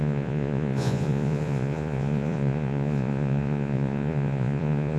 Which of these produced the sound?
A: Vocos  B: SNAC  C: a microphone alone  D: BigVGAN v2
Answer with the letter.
A